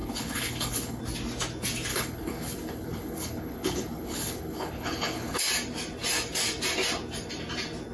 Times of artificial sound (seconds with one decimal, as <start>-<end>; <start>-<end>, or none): 0.0-1.0; 1.9-5.4